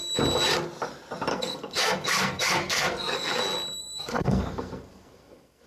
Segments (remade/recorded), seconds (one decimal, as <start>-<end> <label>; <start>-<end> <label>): 0.0-1.3 recorded; 1.3-3.4 remade; 3.4-3.8 recorded; 3.8-5.7 remade